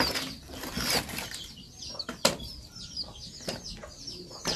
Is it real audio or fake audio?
real